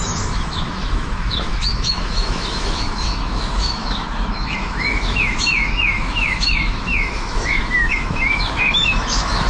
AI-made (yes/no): yes